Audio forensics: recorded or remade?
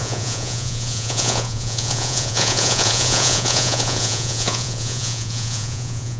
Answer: remade